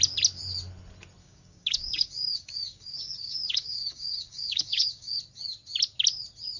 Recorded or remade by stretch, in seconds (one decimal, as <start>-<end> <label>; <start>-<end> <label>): 0.0-1.2 recorded; 1.2-5.2 remade; 5.2-6.6 recorded